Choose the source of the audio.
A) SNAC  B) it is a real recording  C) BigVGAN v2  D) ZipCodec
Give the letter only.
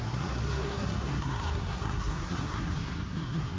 A